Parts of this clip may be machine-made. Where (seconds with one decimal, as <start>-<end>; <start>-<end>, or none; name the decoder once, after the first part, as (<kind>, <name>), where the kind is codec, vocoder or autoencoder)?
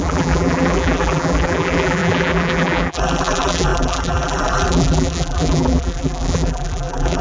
0.0-7.2 (vocoder, BigVGAN v2)